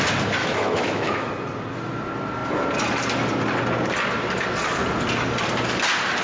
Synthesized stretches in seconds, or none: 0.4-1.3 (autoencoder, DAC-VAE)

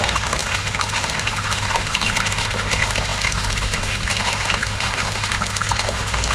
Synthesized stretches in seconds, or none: 0.0-6.3 (autoencoder, DAC-VAE)

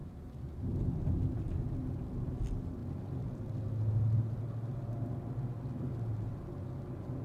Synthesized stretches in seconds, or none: none

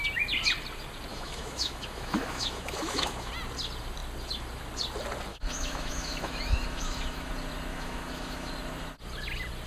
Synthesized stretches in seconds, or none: 1.1-3.3 (autoencoder, DAC-VAE); 5.3-7.3; 7.7-8.5